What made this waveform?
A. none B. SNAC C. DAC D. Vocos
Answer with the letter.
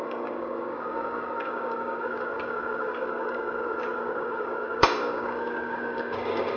C